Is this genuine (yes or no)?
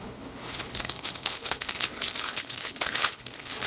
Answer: no